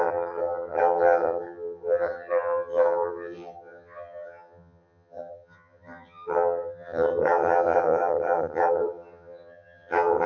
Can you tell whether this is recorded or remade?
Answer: remade